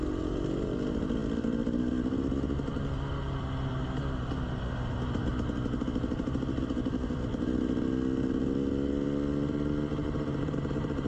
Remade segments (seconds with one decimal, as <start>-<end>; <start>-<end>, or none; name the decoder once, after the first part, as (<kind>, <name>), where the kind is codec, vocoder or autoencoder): 0.0-1.2 (vocoder, BigVGAN v2); 4.6-5.3; 10.0-11.1